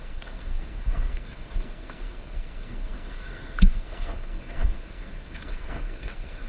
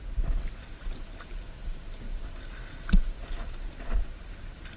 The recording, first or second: second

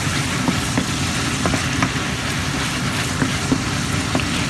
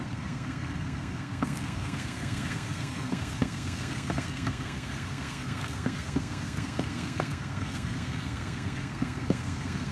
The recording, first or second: first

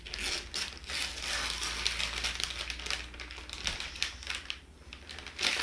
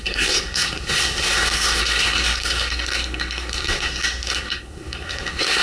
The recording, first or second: first